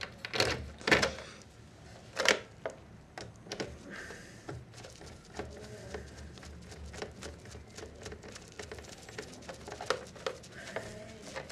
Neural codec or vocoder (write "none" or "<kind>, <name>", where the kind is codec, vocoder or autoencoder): none